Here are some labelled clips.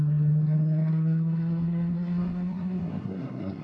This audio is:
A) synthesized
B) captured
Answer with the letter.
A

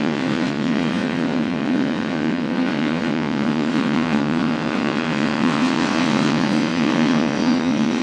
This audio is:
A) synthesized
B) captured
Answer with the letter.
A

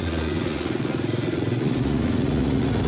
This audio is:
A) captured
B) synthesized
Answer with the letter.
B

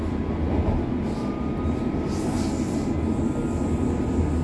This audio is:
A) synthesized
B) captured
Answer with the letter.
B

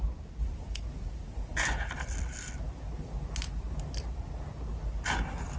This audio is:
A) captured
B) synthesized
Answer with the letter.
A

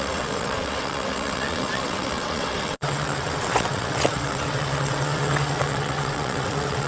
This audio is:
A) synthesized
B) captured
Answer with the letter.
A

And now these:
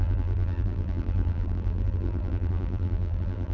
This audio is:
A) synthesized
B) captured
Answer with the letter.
A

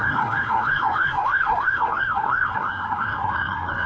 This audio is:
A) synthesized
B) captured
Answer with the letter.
A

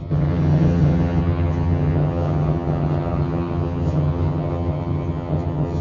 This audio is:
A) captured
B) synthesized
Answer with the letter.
B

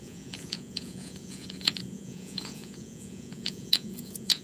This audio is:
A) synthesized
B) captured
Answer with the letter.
A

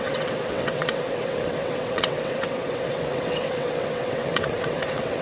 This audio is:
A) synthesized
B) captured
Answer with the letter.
A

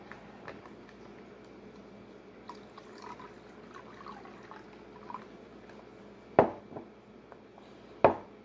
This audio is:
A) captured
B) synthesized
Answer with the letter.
A